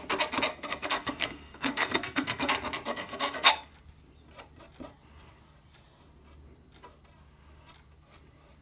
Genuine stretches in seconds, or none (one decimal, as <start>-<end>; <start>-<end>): 0.0-0.5; 2.5-2.9; 3.7-8.6